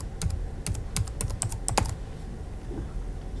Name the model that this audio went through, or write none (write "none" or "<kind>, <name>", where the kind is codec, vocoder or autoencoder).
none